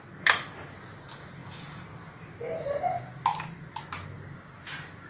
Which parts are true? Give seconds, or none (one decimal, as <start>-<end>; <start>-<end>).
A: 0.0-3.3; 3.8-5.1